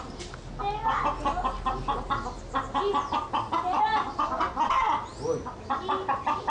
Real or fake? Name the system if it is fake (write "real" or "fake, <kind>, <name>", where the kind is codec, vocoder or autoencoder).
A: real